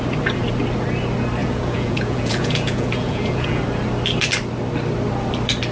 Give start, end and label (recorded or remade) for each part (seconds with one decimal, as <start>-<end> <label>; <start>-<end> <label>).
0.0-1.4 recorded; 1.4-3.6 remade; 3.6-5.7 recorded